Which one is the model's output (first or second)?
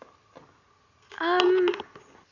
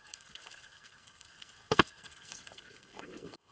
second